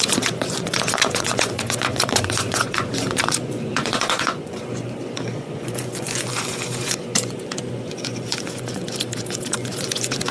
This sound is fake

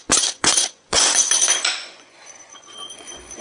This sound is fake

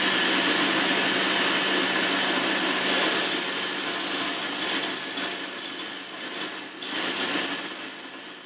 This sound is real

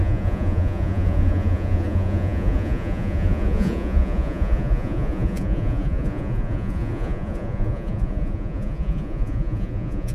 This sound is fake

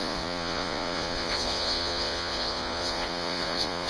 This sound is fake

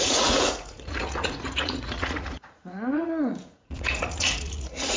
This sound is fake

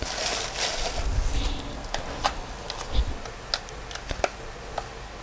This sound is real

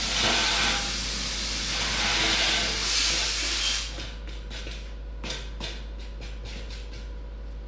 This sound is real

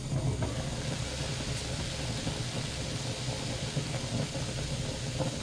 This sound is real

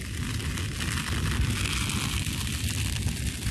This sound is real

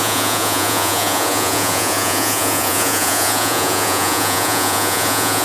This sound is fake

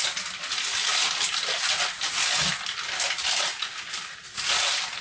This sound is real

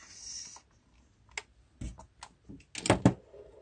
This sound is real